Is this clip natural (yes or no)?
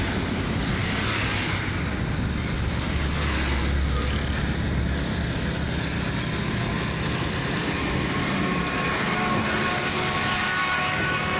yes